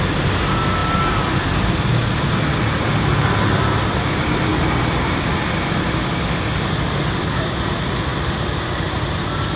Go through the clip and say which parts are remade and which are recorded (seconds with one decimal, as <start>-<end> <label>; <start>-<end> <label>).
0.0-4.5 recorded; 4.5-6.1 remade; 6.1-8.1 recorded; 8.1-9.6 remade